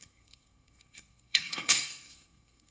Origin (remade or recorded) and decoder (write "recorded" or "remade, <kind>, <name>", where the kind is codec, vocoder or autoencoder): remade, codec, SNAC